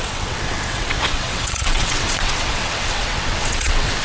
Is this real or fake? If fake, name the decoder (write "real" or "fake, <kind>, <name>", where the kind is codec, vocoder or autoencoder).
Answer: fake, vocoder, WaveNeXt